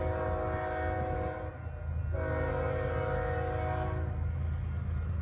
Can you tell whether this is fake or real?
real